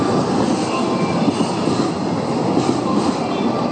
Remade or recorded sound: recorded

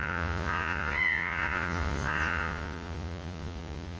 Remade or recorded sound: remade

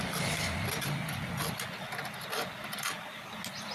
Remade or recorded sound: recorded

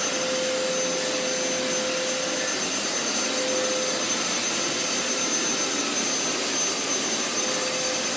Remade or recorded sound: recorded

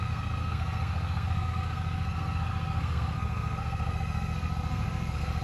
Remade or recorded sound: remade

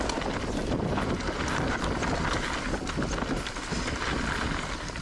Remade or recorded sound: recorded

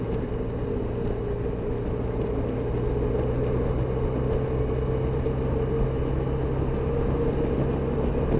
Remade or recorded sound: recorded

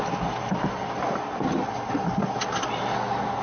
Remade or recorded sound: recorded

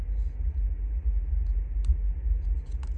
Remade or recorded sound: recorded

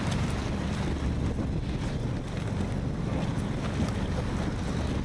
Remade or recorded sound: recorded